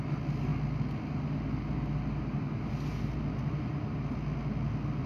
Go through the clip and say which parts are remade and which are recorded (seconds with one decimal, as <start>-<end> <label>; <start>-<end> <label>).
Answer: 0.0-5.1 recorded